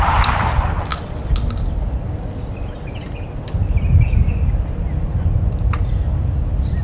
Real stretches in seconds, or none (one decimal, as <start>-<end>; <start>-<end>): 0.0-6.8